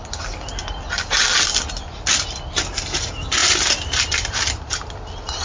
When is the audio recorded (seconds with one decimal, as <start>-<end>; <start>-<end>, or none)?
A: 0.0-5.4